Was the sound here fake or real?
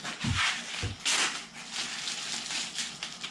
real